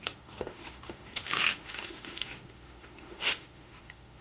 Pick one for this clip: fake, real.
fake